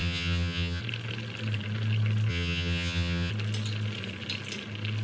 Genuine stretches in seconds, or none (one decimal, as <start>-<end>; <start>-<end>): 0.8-2.3; 3.3-5.0